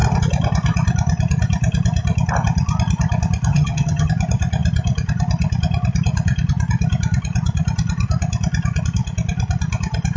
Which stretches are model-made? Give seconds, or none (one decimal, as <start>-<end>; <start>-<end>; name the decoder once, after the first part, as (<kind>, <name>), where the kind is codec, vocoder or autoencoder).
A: 3.5-4.1 (vocoder, HiFi-GAN)